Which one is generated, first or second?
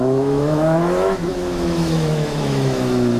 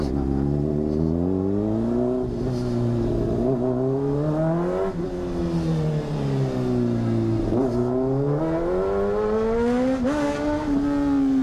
first